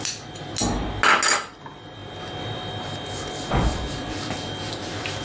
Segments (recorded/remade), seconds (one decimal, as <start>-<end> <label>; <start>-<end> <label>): 0.0-5.2 recorded